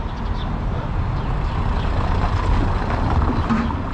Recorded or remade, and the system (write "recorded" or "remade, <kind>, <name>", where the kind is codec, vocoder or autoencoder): recorded